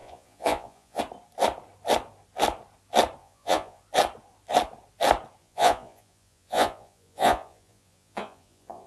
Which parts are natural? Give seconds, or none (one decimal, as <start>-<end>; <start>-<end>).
1.0-3.2; 3.8-5.4